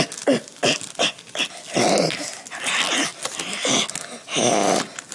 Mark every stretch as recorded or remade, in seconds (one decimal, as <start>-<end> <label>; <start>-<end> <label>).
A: 0.0-5.1 recorded